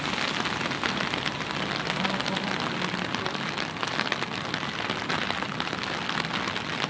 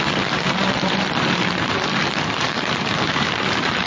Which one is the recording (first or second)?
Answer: first